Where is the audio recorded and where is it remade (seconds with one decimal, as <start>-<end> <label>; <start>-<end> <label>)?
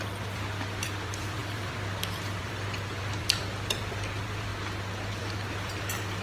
0.0-4.5 remade; 4.5-5.2 recorded; 5.2-6.2 remade